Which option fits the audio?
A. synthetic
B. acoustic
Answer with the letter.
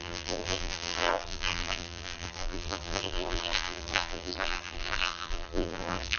A